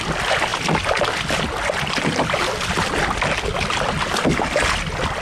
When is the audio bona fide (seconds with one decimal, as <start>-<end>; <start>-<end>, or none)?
0.0-5.2